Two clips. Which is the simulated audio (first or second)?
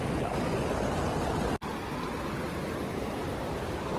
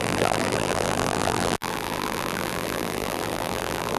second